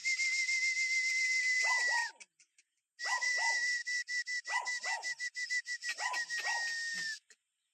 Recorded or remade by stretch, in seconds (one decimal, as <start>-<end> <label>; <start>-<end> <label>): 0.0-1.1 recorded; 1.1-3.8 remade; 3.8-7.7 recorded